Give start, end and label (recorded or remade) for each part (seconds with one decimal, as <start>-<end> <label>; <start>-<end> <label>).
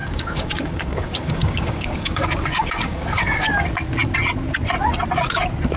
0.0-3.5 remade; 3.5-5.8 recorded